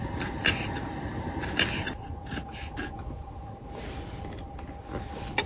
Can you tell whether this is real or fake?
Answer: real